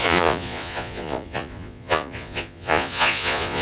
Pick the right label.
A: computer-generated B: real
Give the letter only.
A